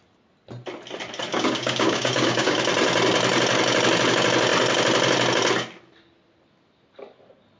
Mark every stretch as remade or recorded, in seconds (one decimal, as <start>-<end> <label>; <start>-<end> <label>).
0.0-1.3 recorded; 1.3-2.6 remade; 2.6-7.6 recorded